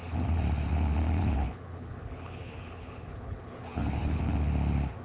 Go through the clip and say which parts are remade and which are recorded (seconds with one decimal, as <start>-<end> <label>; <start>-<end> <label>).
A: 0.0-1.2 recorded; 1.2-4.2 remade; 4.2-5.0 recorded